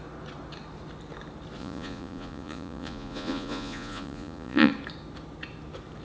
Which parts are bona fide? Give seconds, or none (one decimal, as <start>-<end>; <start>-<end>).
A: 0.0-1.6; 4.7-6.0